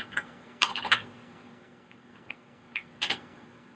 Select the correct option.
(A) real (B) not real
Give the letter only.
B